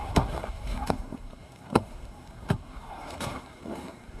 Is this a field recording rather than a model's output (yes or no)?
no